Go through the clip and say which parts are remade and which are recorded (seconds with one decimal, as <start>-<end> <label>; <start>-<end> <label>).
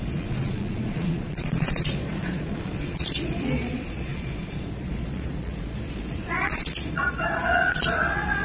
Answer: 0.0-8.4 remade